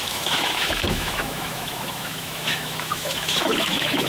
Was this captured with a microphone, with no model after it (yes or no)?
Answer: no